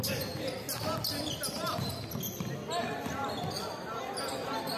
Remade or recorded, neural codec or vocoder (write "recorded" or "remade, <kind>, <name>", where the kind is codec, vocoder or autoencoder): recorded